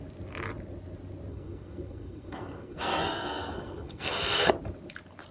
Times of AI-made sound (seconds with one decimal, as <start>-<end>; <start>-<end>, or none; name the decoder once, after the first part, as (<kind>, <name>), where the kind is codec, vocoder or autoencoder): 1.3-4.5 (codec, SNAC)